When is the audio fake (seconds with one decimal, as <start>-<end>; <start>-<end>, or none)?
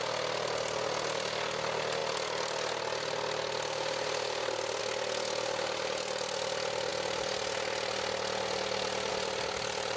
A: none